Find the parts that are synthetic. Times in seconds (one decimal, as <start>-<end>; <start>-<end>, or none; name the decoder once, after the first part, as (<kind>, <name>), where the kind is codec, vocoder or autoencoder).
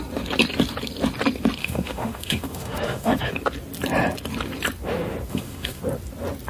1.6-3.3 (autoencoder, DAC-VAE); 5.3-5.8